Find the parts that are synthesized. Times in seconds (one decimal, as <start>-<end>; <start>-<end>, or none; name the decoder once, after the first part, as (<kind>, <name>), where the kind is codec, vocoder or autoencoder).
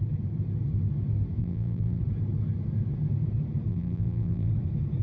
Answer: 1.4-2.0 (vocoder, BigVGAN v2); 3.7-4.5